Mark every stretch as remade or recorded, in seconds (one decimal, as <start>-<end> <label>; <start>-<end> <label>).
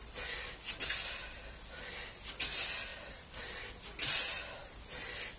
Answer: 0.0-1.2 recorded; 1.2-1.8 remade; 1.8-2.9 recorded; 2.9-3.5 remade; 3.5-5.4 recorded